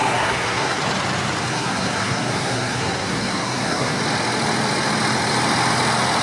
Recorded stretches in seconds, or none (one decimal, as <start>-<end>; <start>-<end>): 0.8-1.5; 4.0-6.2